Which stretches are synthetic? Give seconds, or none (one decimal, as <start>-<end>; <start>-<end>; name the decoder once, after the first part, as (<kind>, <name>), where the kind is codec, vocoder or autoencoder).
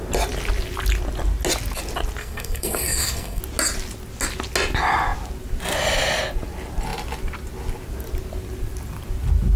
2.2-3.4 (codec, SNAC)